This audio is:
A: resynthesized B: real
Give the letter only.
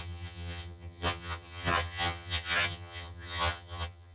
A